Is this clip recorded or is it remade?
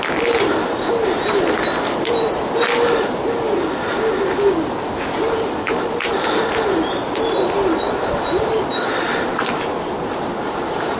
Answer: recorded